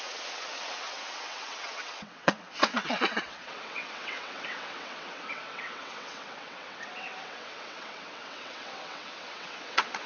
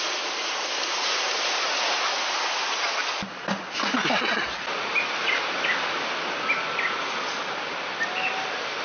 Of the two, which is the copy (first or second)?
first